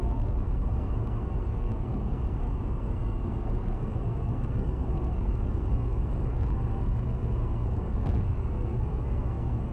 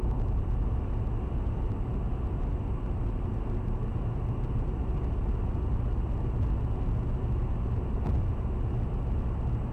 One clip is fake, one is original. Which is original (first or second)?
second